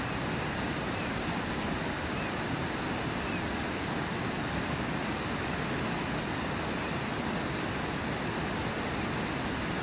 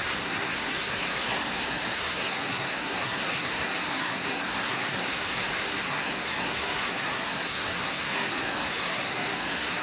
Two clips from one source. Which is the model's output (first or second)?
second